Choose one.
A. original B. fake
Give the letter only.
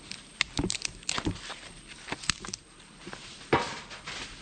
A